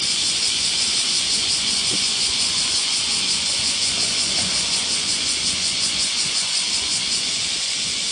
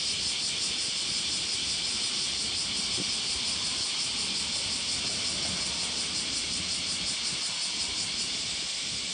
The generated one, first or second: first